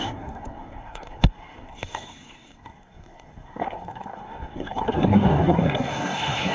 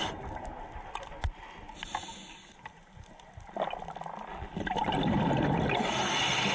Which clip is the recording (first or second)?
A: second